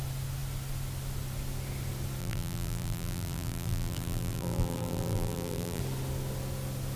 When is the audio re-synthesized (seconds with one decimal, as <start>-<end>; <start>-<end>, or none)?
2.2-5.8

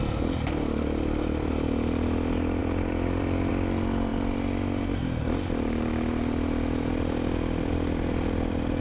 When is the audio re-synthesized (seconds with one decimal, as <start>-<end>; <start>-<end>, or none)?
2.6-3.5

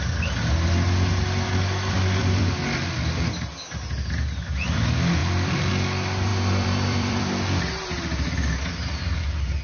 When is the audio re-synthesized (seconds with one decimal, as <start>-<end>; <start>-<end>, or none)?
2.2-3.0; 5.2-5.7; 6.3-7.6